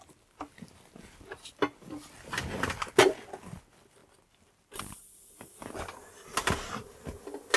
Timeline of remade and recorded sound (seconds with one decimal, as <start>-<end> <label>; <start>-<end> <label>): 0.0-7.6 recorded